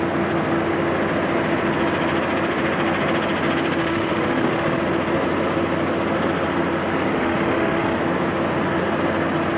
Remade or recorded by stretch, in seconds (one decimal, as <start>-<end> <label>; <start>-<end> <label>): 0.0-3.8 recorded; 3.8-4.8 remade; 4.8-7.1 recorded; 7.1-8.0 remade; 8.0-9.6 recorded